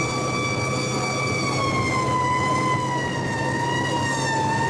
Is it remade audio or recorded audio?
recorded